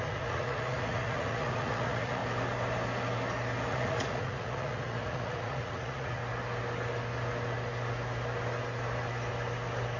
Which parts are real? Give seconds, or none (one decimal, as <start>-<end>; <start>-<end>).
2.2-3.7; 6.2-10.0